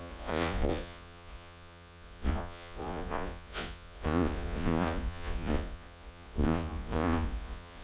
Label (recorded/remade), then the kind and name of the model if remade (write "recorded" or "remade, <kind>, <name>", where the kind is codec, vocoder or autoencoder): remade, vocoder, Vocos